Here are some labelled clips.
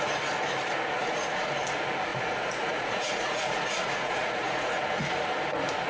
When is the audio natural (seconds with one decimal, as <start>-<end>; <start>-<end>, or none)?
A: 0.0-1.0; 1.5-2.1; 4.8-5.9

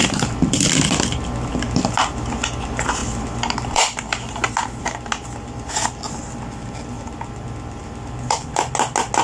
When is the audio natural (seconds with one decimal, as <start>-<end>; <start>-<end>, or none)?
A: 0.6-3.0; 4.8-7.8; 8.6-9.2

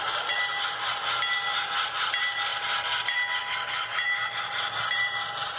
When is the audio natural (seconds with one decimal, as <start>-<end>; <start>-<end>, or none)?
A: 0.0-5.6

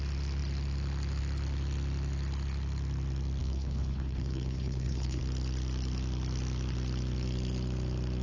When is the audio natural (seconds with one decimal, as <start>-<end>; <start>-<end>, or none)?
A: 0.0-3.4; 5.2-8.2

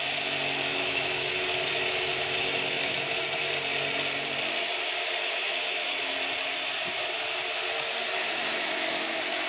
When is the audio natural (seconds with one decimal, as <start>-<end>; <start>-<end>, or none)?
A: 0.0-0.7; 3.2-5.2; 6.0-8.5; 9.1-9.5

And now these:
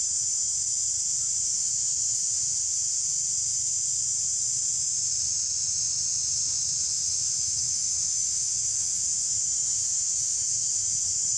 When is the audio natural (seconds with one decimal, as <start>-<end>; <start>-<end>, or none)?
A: 0.5-1.4; 2.4-6.9

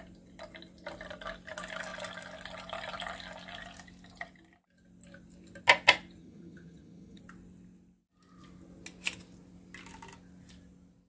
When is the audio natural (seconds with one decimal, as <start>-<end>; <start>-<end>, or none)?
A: 0.0-6.2; 7.2-11.1